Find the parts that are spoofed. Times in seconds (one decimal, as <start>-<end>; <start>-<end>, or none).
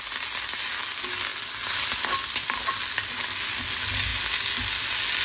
none